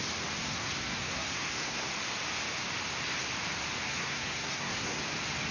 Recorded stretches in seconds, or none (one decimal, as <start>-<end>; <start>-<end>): 0.0-0.4; 1.9-3.9; 5.0-5.5